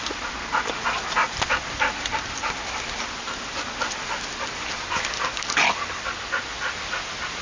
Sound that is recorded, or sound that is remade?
recorded